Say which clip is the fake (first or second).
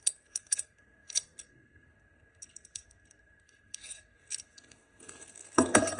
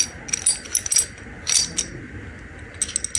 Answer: first